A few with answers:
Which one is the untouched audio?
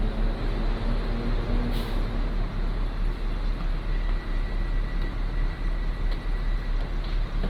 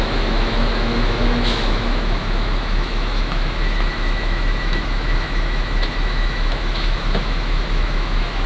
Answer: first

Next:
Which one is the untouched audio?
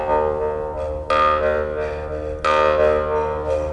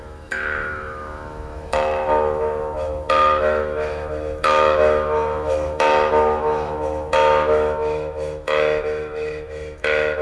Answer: first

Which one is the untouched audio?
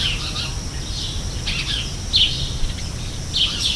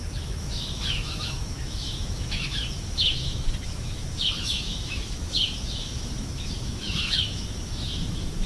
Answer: first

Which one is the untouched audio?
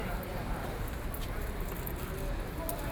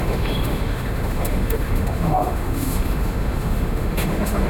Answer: first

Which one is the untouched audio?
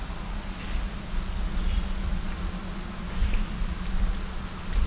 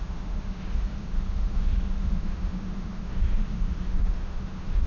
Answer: first